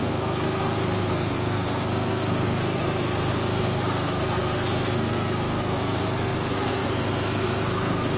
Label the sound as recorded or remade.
remade